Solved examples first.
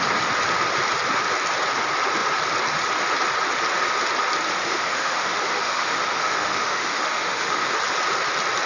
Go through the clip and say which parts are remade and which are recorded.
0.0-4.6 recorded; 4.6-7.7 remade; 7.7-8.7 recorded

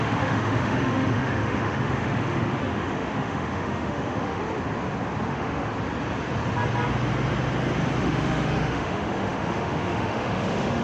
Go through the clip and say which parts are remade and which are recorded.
0.0-4.4 remade; 4.4-5.3 recorded; 5.3-5.7 remade; 5.7-8.0 recorded; 8.0-10.8 remade

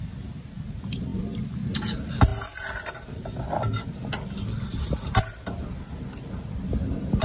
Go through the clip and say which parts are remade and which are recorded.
0.0-7.2 recorded

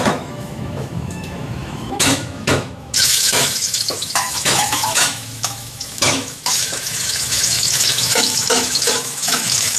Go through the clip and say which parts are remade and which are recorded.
0.0-9.8 remade

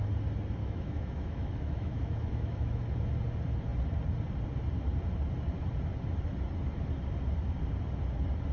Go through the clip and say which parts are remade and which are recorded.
0.0-0.6 recorded; 0.6-2.8 remade; 2.8-8.5 recorded